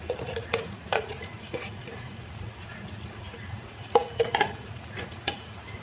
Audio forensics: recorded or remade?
remade